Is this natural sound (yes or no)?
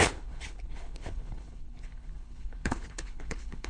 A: no